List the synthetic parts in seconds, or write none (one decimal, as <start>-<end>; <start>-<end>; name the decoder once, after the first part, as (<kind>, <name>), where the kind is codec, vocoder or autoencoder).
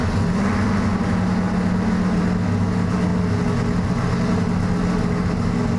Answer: none